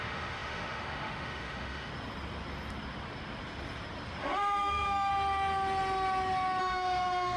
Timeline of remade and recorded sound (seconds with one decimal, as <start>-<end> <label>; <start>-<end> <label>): 0.0-1.9 remade; 1.9-4.2 recorded; 4.2-5.1 remade; 5.1-6.6 recorded; 6.6-7.4 remade